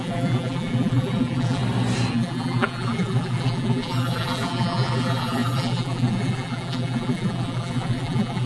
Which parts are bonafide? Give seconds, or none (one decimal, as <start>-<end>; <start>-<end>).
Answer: 1.6-2.1